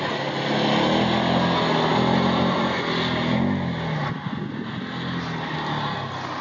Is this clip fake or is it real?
real